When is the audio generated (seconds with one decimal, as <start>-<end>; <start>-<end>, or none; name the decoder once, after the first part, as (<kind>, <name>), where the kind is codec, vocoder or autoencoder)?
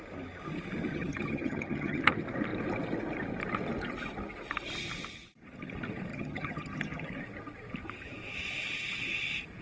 0.9-2.0 (vocoder, HiFi-GAN); 6.1-7.1